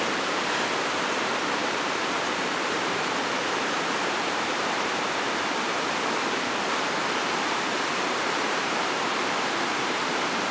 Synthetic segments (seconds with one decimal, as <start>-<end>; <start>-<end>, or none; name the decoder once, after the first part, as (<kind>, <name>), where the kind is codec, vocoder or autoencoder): 1.6-5.2 (vocoder, BigVGAN v2); 7.0-10.1